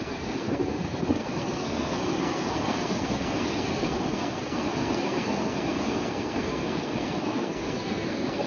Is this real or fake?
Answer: fake